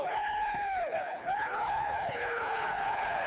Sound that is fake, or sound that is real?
fake